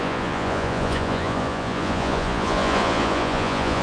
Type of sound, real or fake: fake